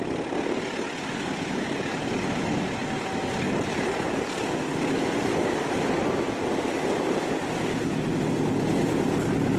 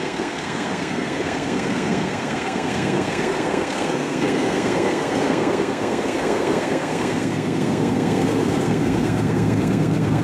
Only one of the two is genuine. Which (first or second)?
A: first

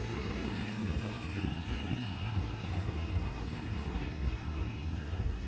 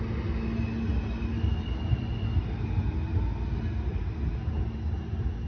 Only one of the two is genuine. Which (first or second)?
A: second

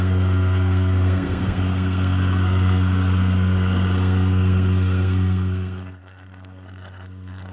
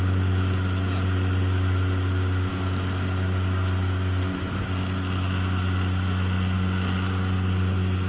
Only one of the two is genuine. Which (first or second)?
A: second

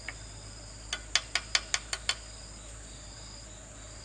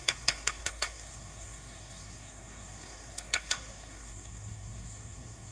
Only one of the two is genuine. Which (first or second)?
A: first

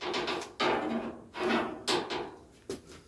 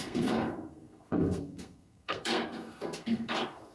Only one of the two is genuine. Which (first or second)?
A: first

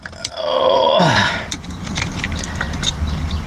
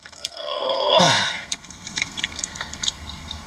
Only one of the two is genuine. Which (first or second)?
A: first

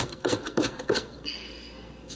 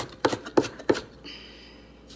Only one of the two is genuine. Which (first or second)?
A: second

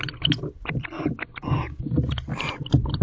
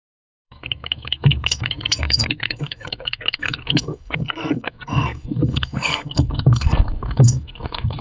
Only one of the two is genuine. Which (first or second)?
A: first